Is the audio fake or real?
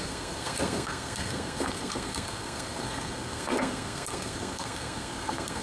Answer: fake